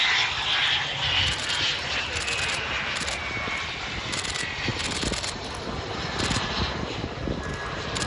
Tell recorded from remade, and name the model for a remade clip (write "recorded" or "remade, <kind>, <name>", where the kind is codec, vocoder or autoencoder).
recorded